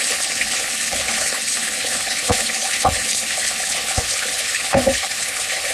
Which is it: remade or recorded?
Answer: remade